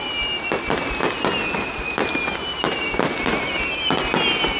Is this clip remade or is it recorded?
recorded